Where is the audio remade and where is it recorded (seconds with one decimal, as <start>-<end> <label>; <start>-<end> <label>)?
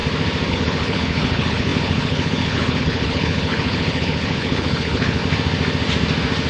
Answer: 0.0-0.5 recorded; 0.5-5.2 remade; 5.2-6.5 recorded